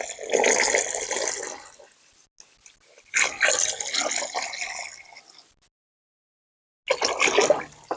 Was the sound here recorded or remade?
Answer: recorded